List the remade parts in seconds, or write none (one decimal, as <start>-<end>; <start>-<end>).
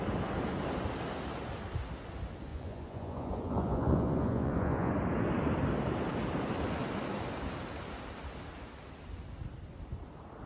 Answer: 2.5-4.9